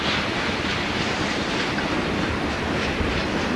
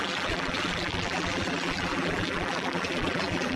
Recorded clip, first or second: first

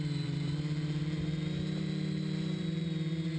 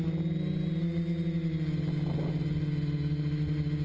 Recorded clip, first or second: second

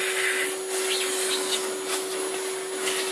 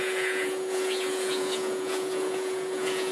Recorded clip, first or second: first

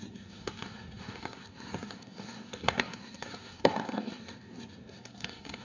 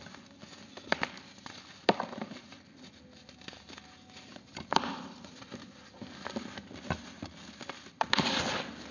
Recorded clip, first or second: second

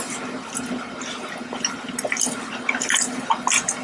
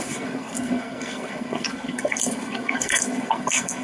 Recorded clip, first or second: first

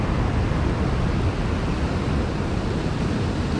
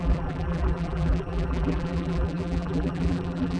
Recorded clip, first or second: first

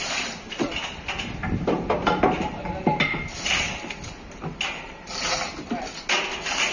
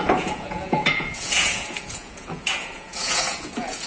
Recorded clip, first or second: first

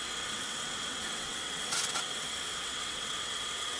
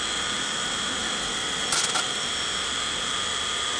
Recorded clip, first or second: second